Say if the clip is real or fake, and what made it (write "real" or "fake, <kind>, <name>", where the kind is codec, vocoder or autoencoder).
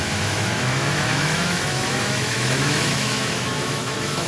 fake, autoencoder, DAC-VAE